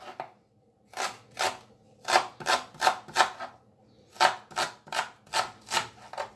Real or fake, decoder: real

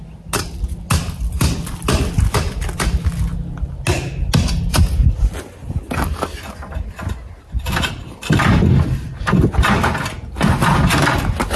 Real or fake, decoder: real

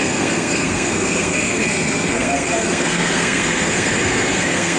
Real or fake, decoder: fake, codec, SNAC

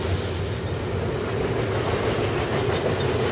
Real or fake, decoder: real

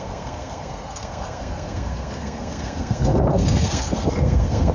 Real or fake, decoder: fake, codec, SNAC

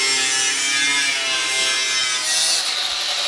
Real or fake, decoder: real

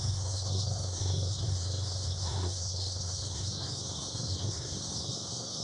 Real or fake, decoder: fake, codec, SNAC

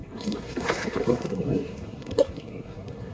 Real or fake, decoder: fake, codec, SNAC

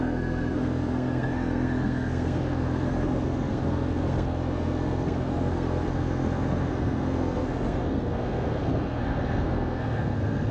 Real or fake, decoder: fake, codec, SNAC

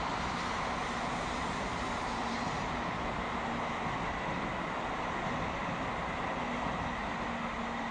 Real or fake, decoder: real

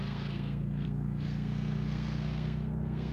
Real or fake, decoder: fake, codec, SNAC